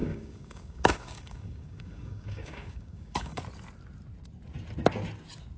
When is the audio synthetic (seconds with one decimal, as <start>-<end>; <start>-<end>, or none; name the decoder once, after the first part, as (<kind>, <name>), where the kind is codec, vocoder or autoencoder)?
0.0-3.4 (codec, DAC)